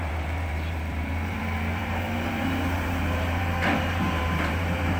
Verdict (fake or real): fake